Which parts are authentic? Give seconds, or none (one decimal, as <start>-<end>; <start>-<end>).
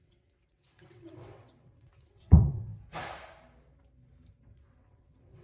2.7-4.4